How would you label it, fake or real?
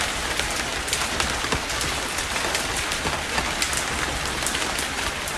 real